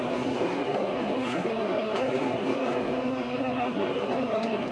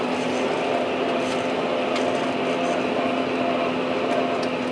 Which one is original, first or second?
second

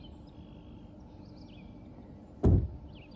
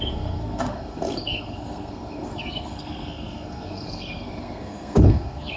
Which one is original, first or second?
first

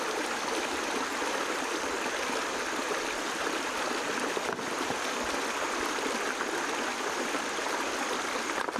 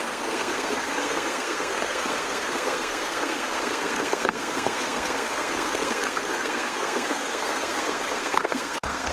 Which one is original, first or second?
first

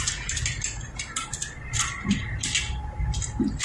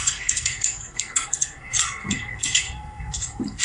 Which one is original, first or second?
first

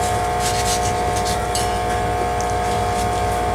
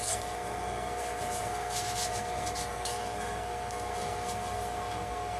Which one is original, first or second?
first